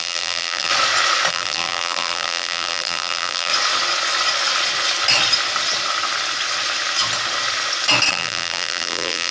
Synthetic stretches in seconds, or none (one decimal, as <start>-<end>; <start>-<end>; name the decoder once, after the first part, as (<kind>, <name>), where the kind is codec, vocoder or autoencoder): 0.0-0.7 (vocoder, BigVGAN v2); 1.3-3.5; 8.1-9.3